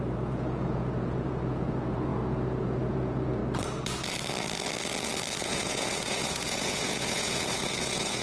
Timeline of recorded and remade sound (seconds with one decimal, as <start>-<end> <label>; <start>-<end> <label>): 0.0-3.4 remade; 3.4-5.4 recorded; 5.4-8.2 remade